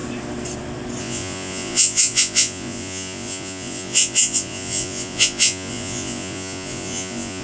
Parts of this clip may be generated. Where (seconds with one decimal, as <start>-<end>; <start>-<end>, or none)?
1.0-7.4